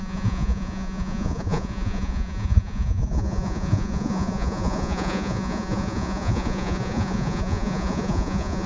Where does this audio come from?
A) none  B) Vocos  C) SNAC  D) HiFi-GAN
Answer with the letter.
B